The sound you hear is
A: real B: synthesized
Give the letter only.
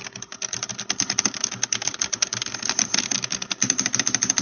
B